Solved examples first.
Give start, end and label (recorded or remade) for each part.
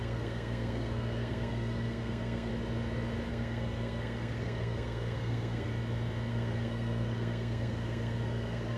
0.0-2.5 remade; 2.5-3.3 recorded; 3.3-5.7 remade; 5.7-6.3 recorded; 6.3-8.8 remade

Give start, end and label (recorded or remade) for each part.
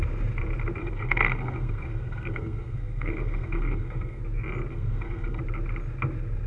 0.0-0.8 recorded; 0.8-4.2 remade; 4.2-4.7 recorded; 4.7-5.4 remade; 5.4-6.5 recorded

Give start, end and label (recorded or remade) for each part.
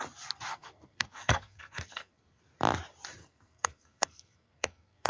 0.0-0.5 recorded; 0.5-2.4 remade; 2.4-3.2 recorded; 3.2-5.1 remade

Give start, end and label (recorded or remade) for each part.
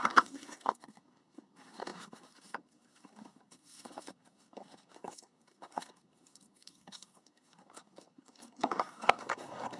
0.0-9.8 remade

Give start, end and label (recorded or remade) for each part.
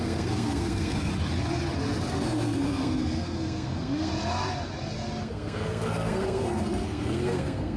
0.0-1.1 remade; 1.1-2.1 recorded; 2.1-4.1 remade; 4.1-5.2 recorded; 5.2-7.8 remade